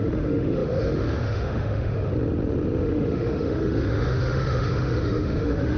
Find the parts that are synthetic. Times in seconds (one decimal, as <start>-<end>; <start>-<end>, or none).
0.0-2.1; 2.8-5.8